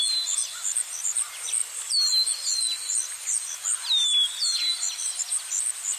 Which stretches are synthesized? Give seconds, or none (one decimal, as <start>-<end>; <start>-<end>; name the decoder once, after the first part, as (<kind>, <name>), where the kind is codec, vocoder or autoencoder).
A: none